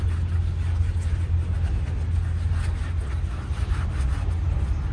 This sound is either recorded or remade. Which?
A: recorded